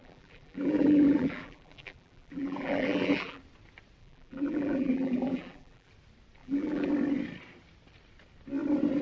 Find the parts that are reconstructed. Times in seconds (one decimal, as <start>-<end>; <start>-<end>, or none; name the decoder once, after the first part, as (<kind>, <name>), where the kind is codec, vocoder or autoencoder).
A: 0.0-3.4 (vocoder, BigVGAN v2); 4.0-5.9; 6.4-6.9